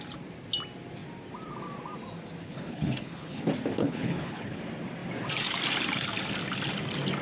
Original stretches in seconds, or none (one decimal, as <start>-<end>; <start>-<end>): 0.0-2.4; 3.4-3.8; 4.6-7.2